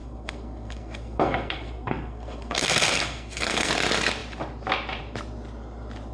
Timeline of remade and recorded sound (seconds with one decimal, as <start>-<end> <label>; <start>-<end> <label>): 0.0-3.7 remade; 3.7-6.1 recorded